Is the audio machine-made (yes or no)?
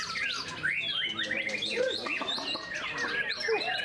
no